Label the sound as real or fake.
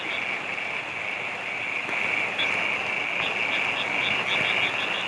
real